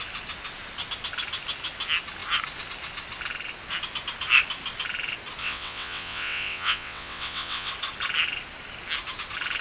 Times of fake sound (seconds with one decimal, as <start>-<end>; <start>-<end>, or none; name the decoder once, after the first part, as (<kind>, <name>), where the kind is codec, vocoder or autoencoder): 5.4-7.7 (vocoder, WaveNeXt)